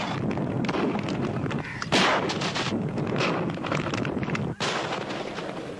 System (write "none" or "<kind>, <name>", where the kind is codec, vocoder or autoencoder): none